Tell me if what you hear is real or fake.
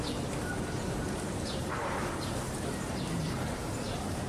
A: fake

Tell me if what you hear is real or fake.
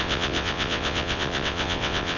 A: fake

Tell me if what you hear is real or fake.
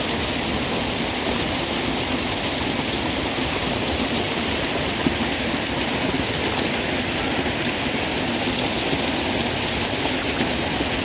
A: real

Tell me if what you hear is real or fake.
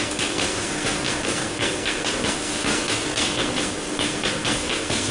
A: fake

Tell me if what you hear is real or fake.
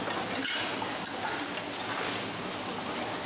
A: real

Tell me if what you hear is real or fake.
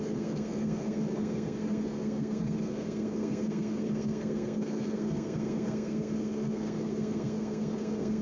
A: fake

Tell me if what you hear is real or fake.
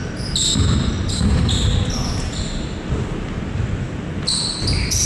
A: real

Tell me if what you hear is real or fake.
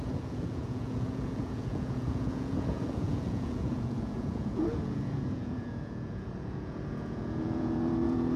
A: fake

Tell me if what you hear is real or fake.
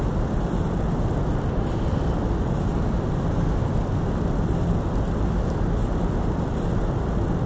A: real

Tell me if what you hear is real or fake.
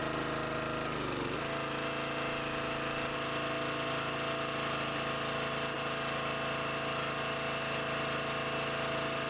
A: real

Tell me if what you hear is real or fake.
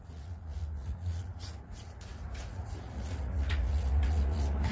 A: fake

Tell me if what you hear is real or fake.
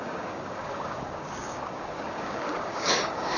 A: fake